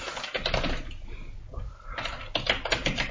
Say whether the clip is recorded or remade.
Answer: recorded